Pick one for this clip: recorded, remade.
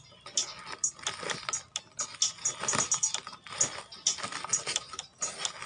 recorded